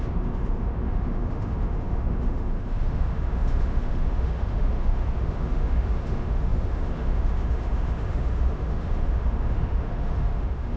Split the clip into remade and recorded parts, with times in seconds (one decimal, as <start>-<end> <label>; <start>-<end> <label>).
0.0-10.8 remade